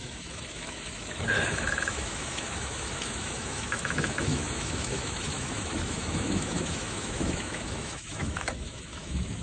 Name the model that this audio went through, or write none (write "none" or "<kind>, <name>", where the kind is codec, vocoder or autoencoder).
autoencoder, DAC-VAE